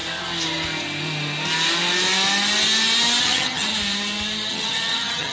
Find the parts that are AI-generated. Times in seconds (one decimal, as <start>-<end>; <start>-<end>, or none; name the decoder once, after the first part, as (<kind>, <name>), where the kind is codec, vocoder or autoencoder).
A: 3.2-3.7 (vocoder, HiFi-GAN); 4.5-5.3